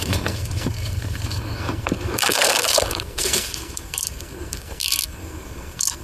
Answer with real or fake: fake